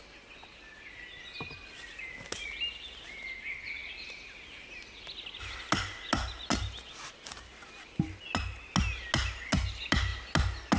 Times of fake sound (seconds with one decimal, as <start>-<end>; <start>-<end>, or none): none